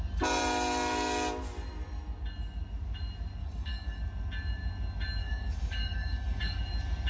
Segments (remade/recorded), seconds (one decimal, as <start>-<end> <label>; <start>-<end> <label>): 0.0-3.4 recorded; 3.4-4.0 remade; 4.0-5.2 recorded; 5.2-6.6 remade; 6.6-7.1 recorded